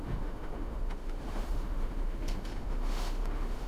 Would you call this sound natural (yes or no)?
no